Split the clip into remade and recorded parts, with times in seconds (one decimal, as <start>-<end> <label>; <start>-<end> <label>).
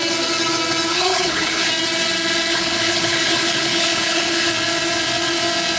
0.0-0.9 recorded; 0.9-1.7 remade; 1.7-2.5 recorded; 2.5-4.5 remade; 4.5-5.8 recorded